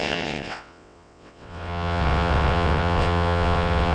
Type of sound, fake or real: fake